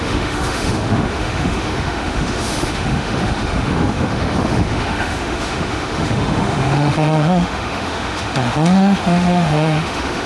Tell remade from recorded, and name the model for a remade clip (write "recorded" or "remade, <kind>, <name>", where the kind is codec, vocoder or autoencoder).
remade, autoencoder, DAC-VAE